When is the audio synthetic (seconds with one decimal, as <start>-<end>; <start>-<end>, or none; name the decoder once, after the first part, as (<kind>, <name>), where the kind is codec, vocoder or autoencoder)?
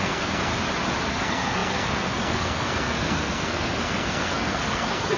0.0-0.5 (codec, SNAC); 1.1-5.2